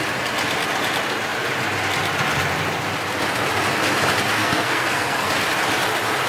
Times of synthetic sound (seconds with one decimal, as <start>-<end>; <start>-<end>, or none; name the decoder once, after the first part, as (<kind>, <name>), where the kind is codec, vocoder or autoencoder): 4.3-5.3 (codec, SNAC)